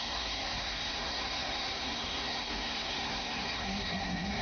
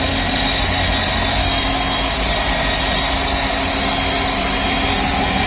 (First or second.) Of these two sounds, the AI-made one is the first